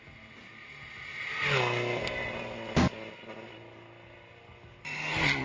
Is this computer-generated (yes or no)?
no